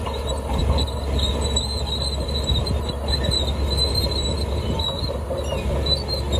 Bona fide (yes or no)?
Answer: yes